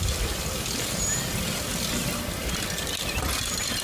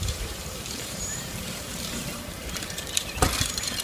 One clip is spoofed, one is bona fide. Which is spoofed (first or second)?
second